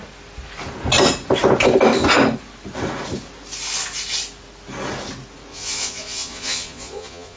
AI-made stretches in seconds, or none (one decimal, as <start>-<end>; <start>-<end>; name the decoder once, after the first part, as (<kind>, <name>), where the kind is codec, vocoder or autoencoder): 5.5-7.4 (vocoder, Vocos)